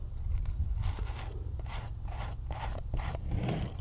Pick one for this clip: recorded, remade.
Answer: recorded